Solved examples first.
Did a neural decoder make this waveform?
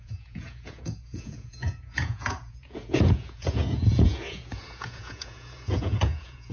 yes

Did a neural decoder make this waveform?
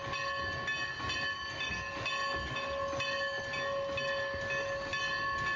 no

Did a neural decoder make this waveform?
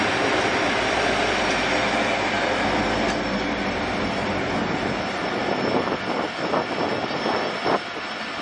no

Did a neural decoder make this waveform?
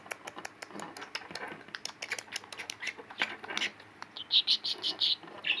no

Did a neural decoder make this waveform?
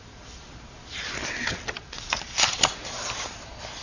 no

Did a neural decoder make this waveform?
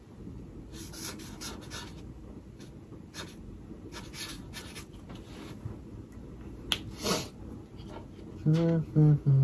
no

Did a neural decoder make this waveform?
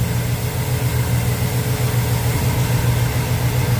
no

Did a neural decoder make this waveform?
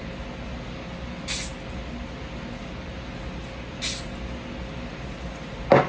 no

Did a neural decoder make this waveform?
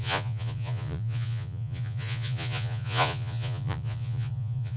yes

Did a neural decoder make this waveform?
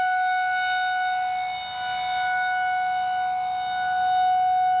no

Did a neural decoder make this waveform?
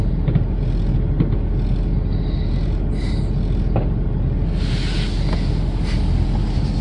no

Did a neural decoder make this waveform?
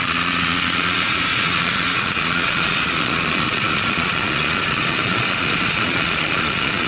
yes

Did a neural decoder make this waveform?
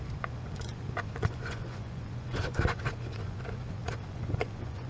yes